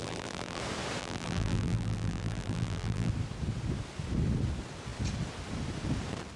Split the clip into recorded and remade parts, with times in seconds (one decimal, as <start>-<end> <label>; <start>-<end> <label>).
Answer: 0.0-0.6 remade; 0.6-1.0 recorded; 1.0-3.1 remade; 3.1-6.4 recorded